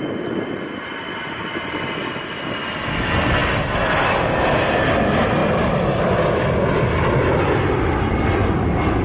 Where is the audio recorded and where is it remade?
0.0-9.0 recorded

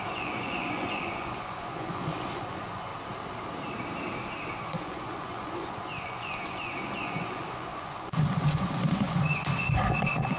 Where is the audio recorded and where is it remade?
0.0-2.9 remade; 2.9-4.5 recorded; 4.5-10.4 remade